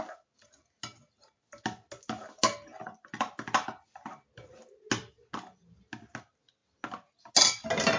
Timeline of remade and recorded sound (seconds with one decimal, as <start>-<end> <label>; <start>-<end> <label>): 0.0-8.0 recorded